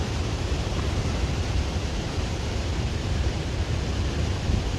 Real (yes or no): no